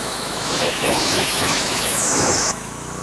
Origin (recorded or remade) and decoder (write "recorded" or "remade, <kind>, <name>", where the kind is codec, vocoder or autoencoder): remade, autoencoder, DAC-VAE